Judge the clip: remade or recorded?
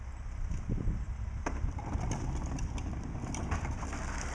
remade